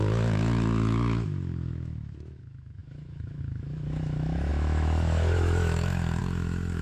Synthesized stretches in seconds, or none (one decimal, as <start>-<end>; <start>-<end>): 0.0-6.8